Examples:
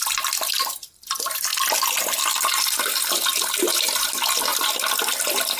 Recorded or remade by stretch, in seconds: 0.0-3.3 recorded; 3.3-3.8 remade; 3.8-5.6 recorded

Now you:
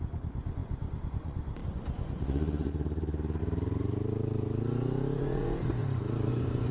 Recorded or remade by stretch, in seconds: 0.0-3.4 remade; 3.4-5.2 recorded; 5.2-5.8 remade; 5.8-6.3 recorded; 6.3-6.7 remade

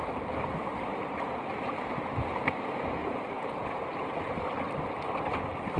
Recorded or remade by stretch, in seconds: 0.0-0.9 recorded; 0.9-4.4 remade; 4.4-5.8 recorded

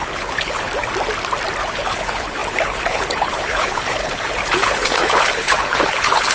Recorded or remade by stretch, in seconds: 0.0-0.7 remade; 0.7-1.7 recorded; 1.7-6.3 remade

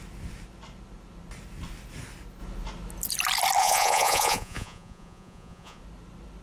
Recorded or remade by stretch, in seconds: 0.0-3.6 recorded; 3.6-5.8 remade; 5.8-6.4 recorded